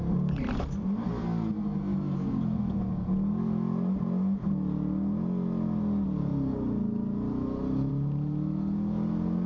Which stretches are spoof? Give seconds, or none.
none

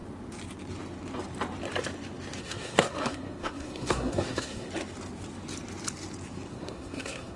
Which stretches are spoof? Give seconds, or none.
2.4-4.7 (codec, SNAC); 6.5-7.4

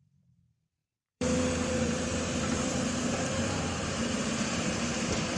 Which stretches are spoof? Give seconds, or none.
0.0-5.4 (vocoder, BigVGAN v2)

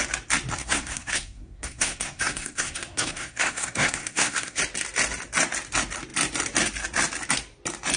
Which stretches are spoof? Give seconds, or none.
0.6-4.6 (codec, SNAC)

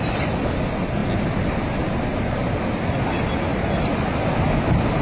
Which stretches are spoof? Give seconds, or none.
none

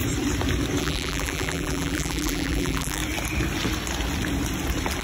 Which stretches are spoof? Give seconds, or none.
0.8-3.0 (vocoder, BigVGAN v2)

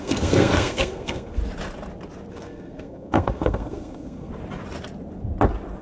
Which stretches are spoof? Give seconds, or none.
0.0-1.4 (codec, SNAC); 2.3-4.3

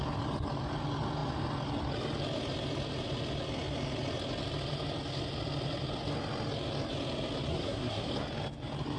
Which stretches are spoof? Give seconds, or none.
7.5-8.1 (codec, SNAC)